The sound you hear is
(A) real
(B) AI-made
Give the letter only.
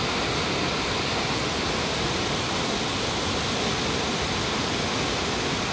A